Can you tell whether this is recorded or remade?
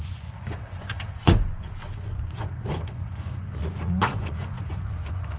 remade